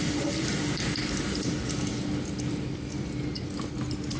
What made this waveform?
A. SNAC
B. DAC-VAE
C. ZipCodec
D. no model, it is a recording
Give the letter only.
D